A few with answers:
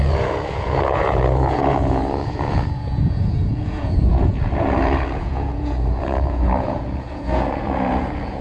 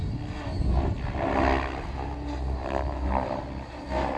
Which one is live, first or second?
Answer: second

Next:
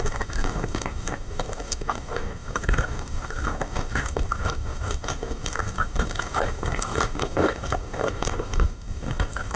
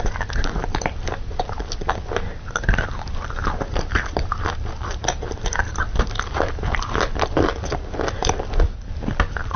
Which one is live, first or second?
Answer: second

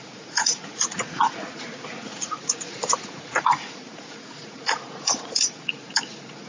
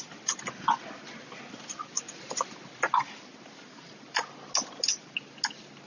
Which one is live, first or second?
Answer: second